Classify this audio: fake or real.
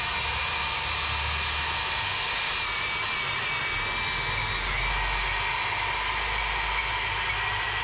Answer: real